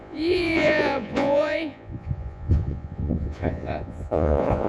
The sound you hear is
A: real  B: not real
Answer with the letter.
B